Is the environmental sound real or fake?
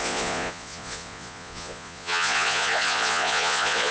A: fake